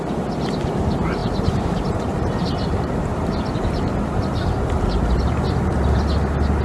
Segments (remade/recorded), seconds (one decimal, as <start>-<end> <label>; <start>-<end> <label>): 0.0-1.2 recorded; 1.2-2.3 remade; 2.3-6.6 recorded